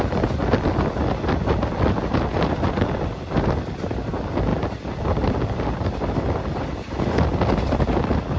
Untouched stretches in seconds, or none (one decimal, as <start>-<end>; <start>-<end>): 0.0-8.4